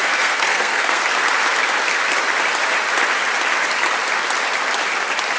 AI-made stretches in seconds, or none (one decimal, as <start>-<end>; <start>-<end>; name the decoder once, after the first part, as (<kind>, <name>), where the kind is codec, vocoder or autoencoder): 0.0-1.0 (codec, SNAC)